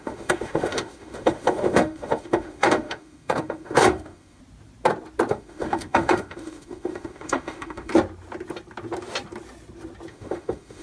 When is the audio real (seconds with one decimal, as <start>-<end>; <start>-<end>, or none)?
4.4-5.3; 7.9-10.1